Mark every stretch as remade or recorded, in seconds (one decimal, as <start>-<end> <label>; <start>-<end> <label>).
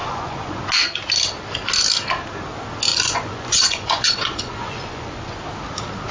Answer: 0.0-0.6 remade; 0.6-2.9 recorded; 2.9-5.4 remade; 5.4-6.1 recorded